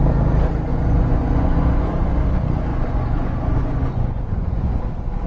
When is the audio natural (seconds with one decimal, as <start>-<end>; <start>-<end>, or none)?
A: 0.0-0.7; 1.9-2.7; 4.8-5.3